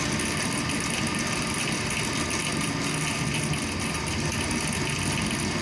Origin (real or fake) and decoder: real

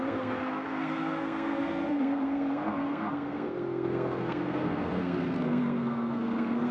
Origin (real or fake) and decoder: fake, codec, SNAC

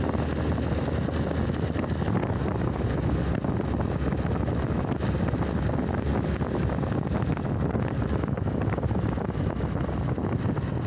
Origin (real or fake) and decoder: real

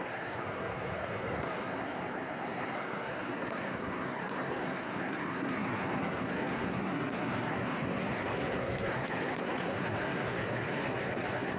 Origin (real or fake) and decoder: fake, codec, SNAC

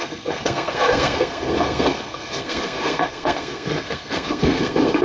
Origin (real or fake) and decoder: fake, codec, SNAC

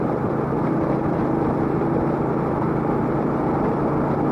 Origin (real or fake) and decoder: real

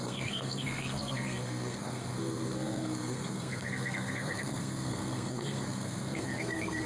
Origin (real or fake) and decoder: fake, codec, SNAC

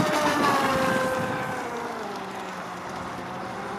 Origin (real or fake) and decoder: real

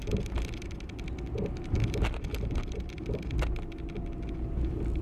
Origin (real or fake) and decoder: real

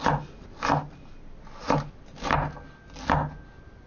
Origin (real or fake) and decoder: real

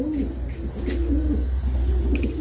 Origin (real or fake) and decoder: real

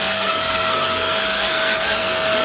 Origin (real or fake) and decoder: fake, codec, SNAC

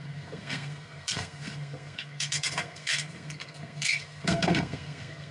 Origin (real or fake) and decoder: fake, codec, SNAC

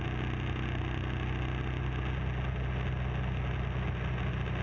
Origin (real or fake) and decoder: real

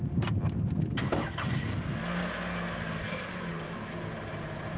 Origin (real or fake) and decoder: real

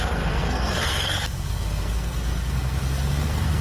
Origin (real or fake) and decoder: fake, codec, SNAC